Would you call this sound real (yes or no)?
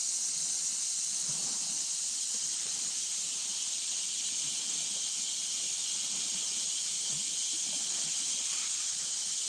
no